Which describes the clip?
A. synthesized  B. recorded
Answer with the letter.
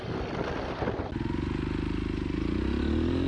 B